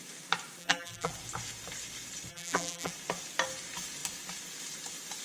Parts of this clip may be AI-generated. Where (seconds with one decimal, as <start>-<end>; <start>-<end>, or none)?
0.6-1.1; 2.3-2.9